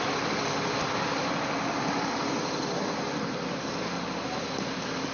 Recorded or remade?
recorded